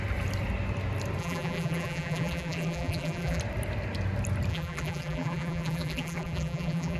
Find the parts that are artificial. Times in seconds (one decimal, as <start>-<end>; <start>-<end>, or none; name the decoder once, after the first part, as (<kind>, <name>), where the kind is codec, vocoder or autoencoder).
1.2-3.4 (vocoder, BigVGAN v2); 4.5-7.0